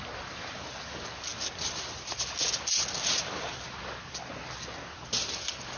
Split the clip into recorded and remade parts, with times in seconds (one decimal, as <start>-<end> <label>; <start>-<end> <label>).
0.0-5.8 recorded